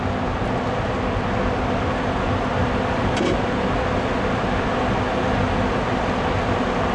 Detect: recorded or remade recorded